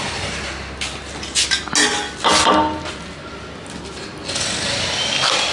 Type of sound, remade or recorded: recorded